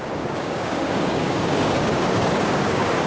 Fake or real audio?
fake